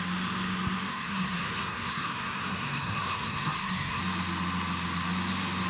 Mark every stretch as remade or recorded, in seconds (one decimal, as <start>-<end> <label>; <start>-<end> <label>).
0.0-0.9 recorded; 0.9-4.0 remade; 4.0-5.7 recorded